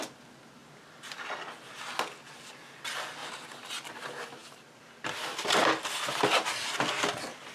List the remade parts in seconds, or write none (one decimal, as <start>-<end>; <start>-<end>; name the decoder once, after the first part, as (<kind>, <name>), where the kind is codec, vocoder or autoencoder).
0.6-1.4 (vocoder, BigVGAN v2); 3.2-3.7